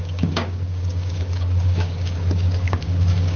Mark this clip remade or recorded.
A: remade